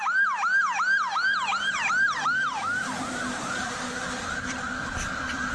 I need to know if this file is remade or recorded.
remade